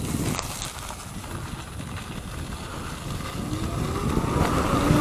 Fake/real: real